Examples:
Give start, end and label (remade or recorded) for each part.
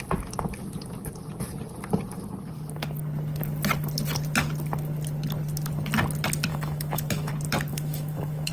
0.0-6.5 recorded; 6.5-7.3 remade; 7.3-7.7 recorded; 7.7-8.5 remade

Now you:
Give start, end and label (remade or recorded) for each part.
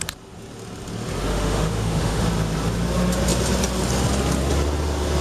0.0-1.3 recorded; 1.3-2.2 remade; 2.2-5.2 recorded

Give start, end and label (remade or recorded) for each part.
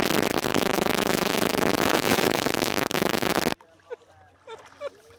0.0-0.5 recorded; 0.5-3.4 remade; 3.4-5.2 recorded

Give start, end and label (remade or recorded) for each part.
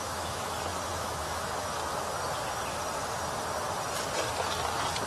0.0-1.8 remade; 1.8-5.1 recorded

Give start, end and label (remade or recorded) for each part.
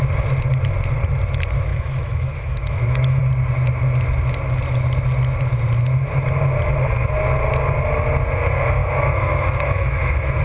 0.0-1.7 recorded; 1.7-3.2 remade; 3.2-8.8 recorded; 8.8-10.4 remade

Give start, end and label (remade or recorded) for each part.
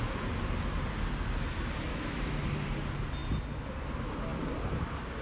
0.0-1.9 recorded; 1.9-2.4 remade; 2.4-5.2 recorded